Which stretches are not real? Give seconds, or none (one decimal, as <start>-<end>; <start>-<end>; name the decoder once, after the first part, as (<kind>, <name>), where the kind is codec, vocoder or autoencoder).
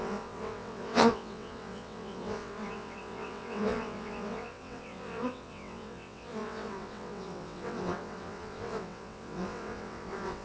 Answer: 0.0-10.4 (vocoder, WaveNeXt)